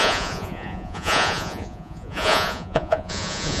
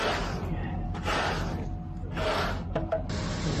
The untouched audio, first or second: second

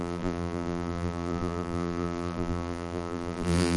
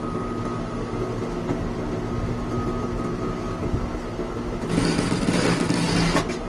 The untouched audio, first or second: second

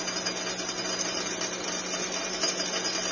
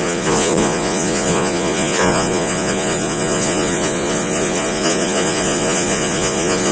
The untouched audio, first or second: first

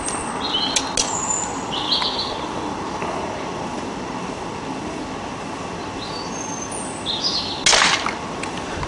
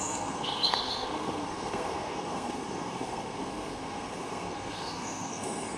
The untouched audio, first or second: first